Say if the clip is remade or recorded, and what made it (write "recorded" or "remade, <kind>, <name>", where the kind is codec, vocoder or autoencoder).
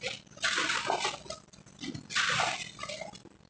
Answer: recorded